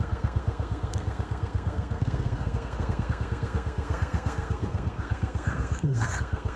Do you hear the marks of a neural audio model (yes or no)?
yes